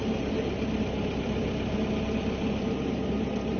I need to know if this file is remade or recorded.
recorded